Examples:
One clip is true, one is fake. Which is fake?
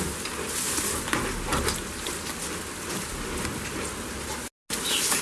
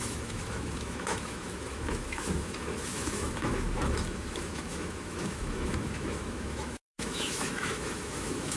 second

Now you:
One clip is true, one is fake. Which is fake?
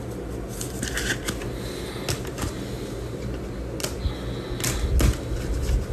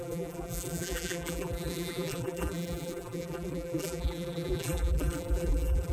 second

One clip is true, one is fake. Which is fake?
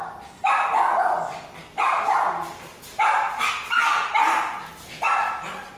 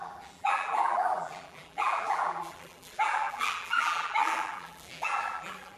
second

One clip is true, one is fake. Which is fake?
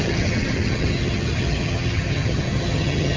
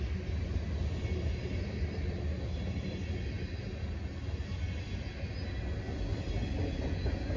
first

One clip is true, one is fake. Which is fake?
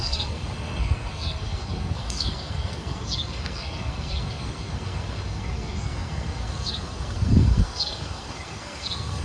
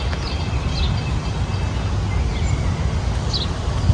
first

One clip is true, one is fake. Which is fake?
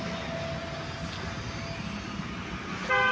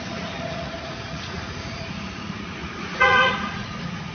second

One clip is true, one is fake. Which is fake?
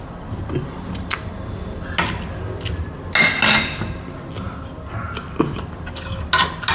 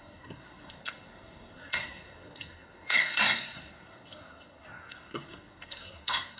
second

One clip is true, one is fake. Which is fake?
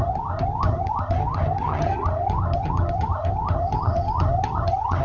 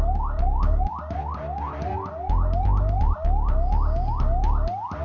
first